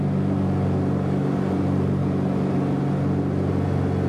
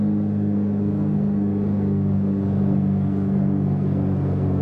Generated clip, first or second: second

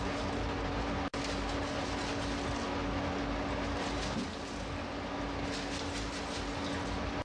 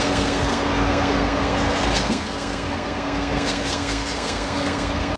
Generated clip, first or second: second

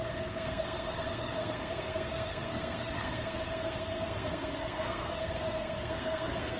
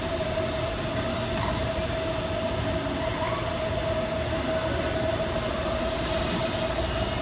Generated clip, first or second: first